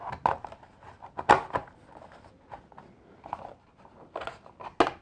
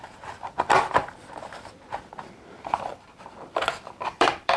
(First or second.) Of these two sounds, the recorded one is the first